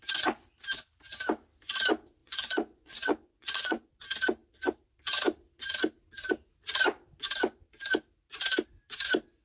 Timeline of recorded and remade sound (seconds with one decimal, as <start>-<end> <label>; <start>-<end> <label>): 0.0-2.2 recorded; 2.2-3.9 remade; 3.9-9.4 recorded